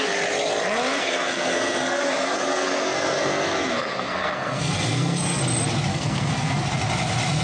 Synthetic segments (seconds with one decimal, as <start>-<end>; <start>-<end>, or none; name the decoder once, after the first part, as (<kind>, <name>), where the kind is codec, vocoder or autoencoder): 1.0-5.4 (codec, SNAC); 5.9-6.6